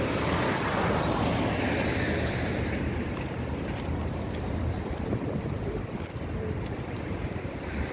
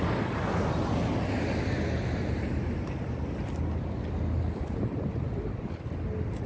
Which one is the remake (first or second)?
first